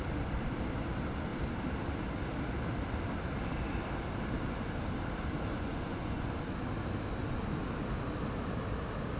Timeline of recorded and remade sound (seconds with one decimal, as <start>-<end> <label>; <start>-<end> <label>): 0.0-5.5 recorded; 5.5-6.3 remade; 6.3-9.2 recorded